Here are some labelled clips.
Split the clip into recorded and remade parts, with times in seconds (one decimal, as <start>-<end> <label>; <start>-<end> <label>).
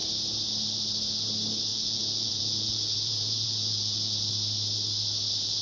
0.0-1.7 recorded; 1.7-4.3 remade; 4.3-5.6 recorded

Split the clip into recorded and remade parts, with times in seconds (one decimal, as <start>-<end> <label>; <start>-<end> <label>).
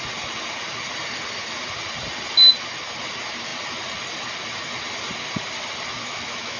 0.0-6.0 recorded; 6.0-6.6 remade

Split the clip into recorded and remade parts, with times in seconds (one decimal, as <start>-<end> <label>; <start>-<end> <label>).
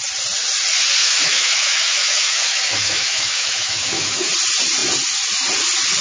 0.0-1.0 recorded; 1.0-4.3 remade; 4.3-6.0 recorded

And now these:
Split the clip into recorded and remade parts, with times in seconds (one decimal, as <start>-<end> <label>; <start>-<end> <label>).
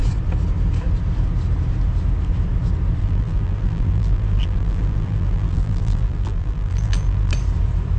0.0-3.0 recorded; 3.0-7.3 remade; 7.3-8.0 recorded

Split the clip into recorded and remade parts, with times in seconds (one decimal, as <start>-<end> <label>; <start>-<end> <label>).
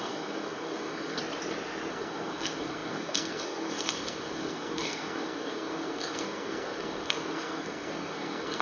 0.0-1.2 remade; 1.2-1.9 recorded; 1.9-8.6 remade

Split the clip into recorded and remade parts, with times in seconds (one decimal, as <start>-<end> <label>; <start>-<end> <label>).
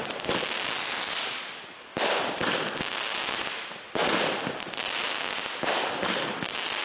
0.0-6.8 recorded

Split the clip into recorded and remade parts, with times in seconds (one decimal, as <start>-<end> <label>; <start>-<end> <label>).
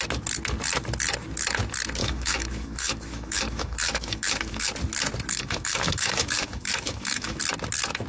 0.0-2.0 recorded; 2.0-4.7 remade; 4.7-5.3 recorded; 5.3-7.4 remade; 7.4-8.1 recorded